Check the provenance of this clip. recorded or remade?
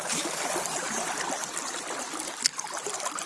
recorded